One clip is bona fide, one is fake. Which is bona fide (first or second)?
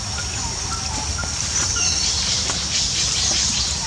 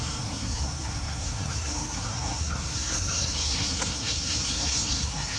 first